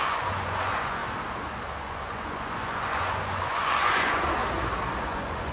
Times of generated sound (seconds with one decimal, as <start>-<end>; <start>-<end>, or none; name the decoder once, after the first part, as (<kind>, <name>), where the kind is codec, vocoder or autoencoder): 0.0-1.0 (vocoder, Vocos); 1.8-4.4; 5.0-5.5